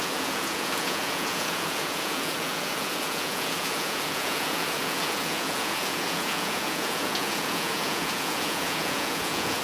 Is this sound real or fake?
fake